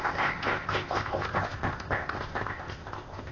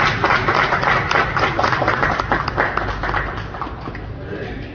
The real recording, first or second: second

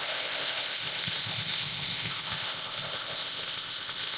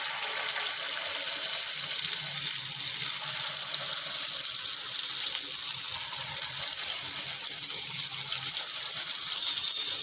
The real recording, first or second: second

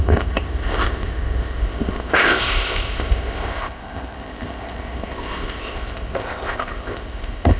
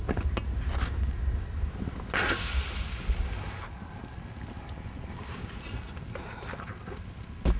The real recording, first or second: second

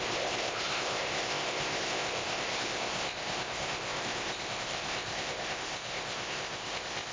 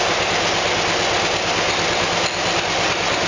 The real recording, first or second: second